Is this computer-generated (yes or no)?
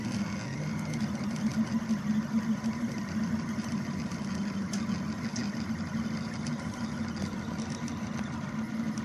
no